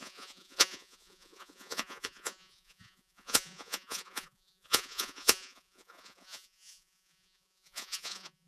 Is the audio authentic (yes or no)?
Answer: no